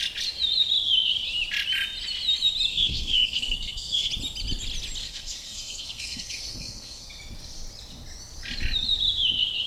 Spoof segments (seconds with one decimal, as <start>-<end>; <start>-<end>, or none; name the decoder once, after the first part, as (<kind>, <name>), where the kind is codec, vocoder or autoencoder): 2.7-4.1 (codec, SNAC); 5.0-7.2